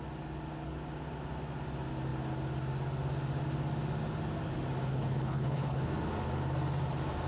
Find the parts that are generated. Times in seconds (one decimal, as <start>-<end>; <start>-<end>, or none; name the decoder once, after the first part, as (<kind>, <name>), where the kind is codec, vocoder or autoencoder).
4.9-5.9 (codec, HILCodec)